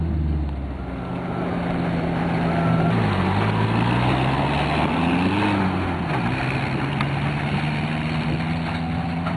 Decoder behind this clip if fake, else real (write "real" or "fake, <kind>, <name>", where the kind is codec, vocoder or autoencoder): real